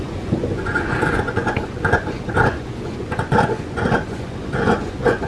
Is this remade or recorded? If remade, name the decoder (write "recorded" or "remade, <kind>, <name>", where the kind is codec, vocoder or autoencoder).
remade, vocoder, Vocos